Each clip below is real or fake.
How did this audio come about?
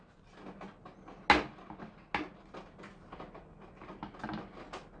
real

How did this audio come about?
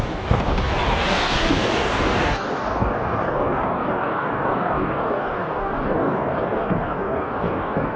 fake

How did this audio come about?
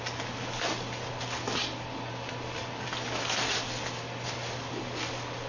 real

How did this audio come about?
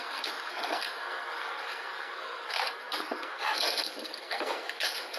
fake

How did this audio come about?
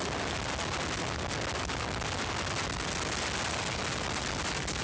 real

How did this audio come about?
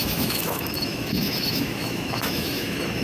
fake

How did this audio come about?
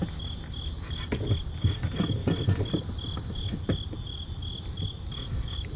real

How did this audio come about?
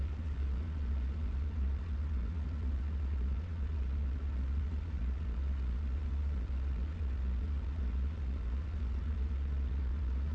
fake